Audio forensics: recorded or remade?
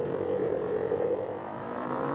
remade